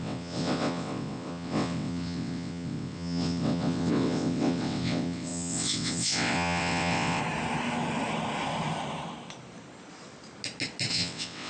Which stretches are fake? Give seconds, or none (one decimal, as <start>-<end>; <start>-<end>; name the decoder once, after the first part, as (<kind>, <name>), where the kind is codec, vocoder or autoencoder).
0.0-7.2 (vocoder, WaveNeXt); 10.9-11.5